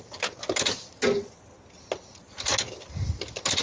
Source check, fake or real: real